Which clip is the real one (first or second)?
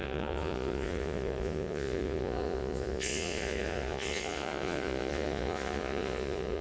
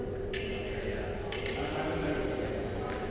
second